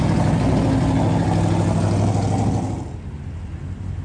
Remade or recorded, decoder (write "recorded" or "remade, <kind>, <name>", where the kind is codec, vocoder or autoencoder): recorded